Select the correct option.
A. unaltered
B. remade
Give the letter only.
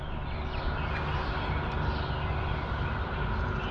A